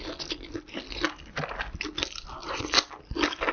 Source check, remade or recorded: recorded